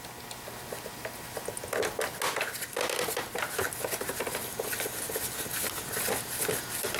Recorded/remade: recorded